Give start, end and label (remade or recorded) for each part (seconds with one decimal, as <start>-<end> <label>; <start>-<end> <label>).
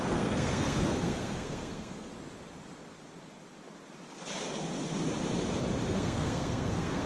0.0-2.1 remade; 2.1-5.9 recorded; 5.9-7.1 remade